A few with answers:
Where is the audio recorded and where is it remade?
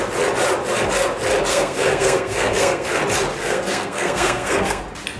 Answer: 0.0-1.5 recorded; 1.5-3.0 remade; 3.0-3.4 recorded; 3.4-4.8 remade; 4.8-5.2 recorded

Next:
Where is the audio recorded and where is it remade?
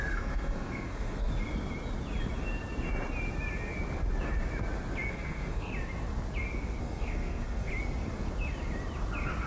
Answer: 0.0-1.3 remade; 1.3-5.1 recorded; 5.1-5.7 remade; 5.7-6.8 recorded; 6.8-7.7 remade; 7.7-9.5 recorded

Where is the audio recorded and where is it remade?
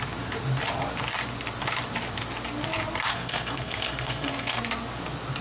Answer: 0.0-3.1 recorded; 3.1-4.6 remade; 4.6-5.4 recorded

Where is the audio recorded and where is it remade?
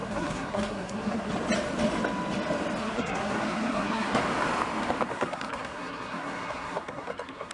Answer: 0.0-1.3 remade; 1.3-2.8 recorded; 2.8-4.2 remade; 4.2-5.1 recorded; 5.1-7.5 remade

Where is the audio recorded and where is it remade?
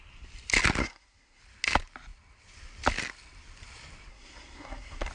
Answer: 0.0-0.8 recorded; 0.8-1.4 remade; 1.4-4.1 recorded; 4.1-5.1 remade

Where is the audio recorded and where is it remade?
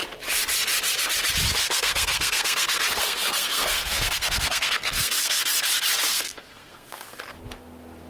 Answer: 0.0-1.6 recorded; 1.6-5.4 remade; 5.4-6.1 recorded; 6.1-7.2 remade; 7.2-8.1 recorded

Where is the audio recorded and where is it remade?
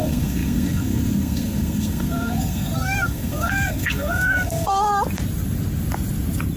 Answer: 0.0-4.9 remade; 4.9-6.6 recorded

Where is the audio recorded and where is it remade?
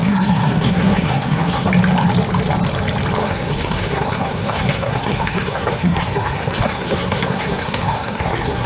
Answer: 0.0-1.7 remade; 1.7-3.2 recorded; 3.2-8.7 remade